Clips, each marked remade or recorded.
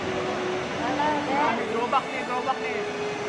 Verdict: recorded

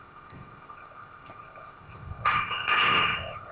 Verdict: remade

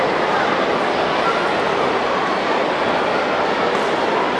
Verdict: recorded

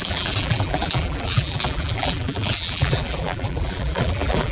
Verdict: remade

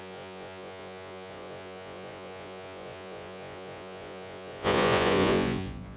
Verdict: remade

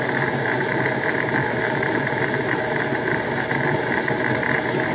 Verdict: recorded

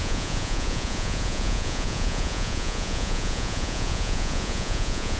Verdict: remade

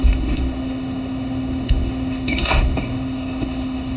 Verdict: remade